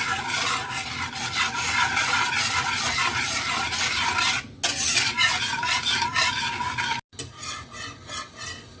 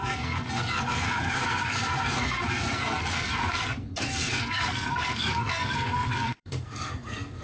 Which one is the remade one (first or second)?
second